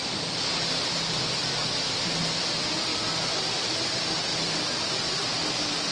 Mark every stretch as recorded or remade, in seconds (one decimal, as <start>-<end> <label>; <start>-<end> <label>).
0.0-4.3 recorded; 4.3-4.8 remade; 4.8-5.9 recorded

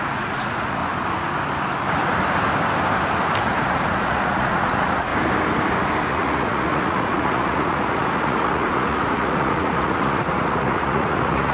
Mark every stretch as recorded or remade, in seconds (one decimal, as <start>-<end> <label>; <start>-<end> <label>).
0.0-0.8 remade; 0.8-3.4 recorded; 3.4-5.1 remade; 5.1-6.1 recorded; 6.1-11.5 remade

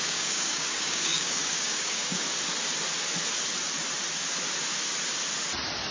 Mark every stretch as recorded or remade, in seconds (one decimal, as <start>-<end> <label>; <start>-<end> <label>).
0.0-2.3 remade; 2.3-5.9 recorded

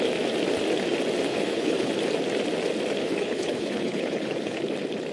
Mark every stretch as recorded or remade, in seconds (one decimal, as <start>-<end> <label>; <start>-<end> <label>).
0.0-1.3 recorded; 1.3-1.9 remade; 1.9-3.0 recorded; 3.0-4.6 remade; 4.6-5.1 recorded

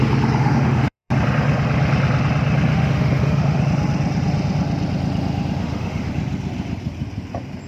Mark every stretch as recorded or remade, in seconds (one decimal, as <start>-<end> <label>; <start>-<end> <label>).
0.0-0.4 recorded; 0.4-1.1 remade; 1.1-2.7 recorded; 2.7-3.6 remade; 3.6-5.6 recorded; 5.6-6.1 remade; 6.1-7.7 recorded